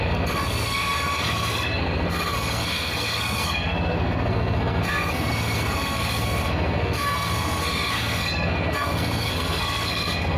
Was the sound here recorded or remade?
remade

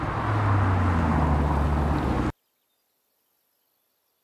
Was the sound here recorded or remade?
recorded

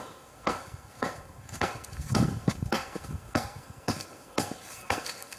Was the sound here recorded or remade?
remade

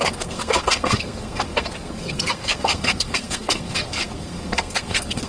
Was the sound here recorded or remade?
remade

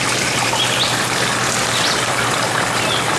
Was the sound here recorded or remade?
recorded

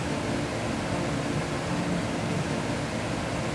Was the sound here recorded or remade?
recorded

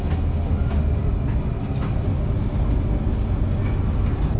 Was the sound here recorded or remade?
recorded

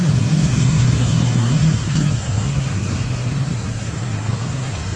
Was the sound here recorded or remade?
remade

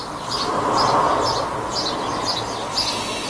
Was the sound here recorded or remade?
recorded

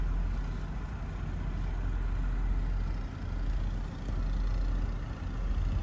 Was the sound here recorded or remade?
recorded